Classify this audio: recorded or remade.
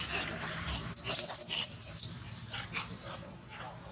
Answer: remade